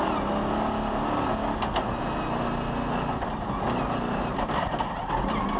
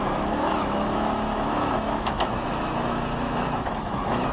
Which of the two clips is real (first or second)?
first